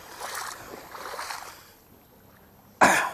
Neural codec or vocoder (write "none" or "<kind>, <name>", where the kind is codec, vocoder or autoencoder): none